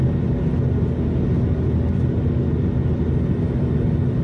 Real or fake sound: real